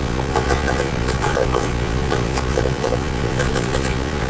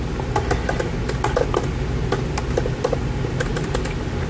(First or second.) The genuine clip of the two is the second